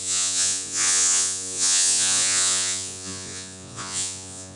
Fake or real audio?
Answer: fake